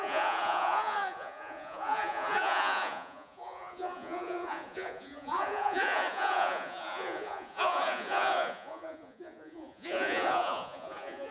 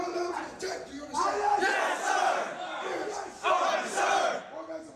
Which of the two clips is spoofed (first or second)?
first